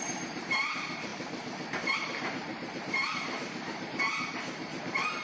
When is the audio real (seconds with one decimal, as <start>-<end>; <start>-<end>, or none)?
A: none

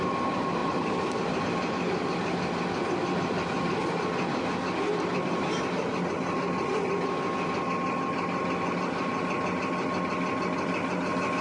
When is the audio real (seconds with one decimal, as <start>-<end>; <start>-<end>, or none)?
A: 0.0-0.6; 1.4-4.9; 5.7-11.4

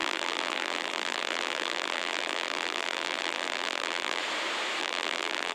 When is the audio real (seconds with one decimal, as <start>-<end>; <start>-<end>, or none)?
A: 4.2-4.8

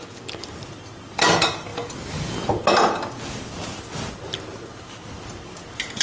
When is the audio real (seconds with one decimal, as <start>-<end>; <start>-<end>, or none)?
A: 0.0-6.0

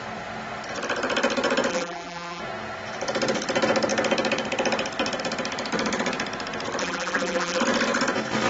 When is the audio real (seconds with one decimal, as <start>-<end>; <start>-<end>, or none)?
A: 0.0-1.7; 2.4-6.8; 7.6-8.5